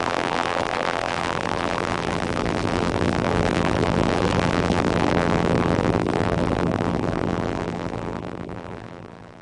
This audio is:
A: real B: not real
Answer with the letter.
B